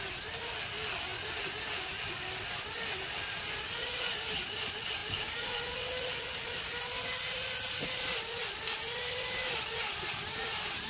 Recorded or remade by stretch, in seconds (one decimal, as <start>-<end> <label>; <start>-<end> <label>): 0.0-10.9 recorded